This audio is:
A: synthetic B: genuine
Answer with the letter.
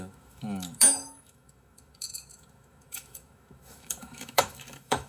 A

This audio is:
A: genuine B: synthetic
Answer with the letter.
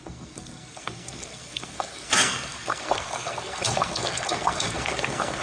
B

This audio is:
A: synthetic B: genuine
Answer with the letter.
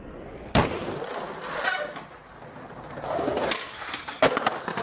B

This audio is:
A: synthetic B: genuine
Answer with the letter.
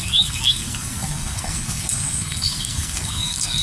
A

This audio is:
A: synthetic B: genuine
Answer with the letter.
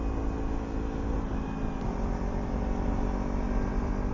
B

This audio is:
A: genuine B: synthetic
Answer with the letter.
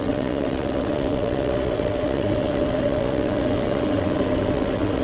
B